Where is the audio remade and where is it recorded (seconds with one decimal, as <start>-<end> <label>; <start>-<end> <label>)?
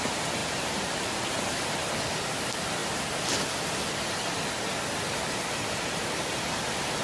0.0-0.4 recorded; 0.4-1.4 remade; 1.4-7.0 recorded